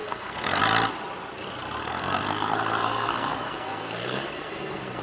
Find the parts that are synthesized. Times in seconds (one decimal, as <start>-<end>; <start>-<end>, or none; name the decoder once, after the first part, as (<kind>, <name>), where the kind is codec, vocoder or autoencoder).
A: 0.0-0.6 (codec, SNAC); 1.8-5.0